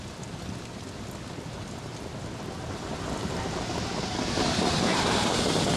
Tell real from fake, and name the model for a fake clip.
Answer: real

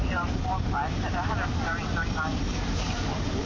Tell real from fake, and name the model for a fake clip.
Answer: fake, vocoder, BigVGAN v2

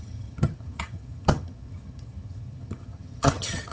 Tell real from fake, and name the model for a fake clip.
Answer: fake, vocoder, HiFi-GAN